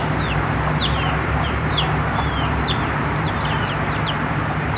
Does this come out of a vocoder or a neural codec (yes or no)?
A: yes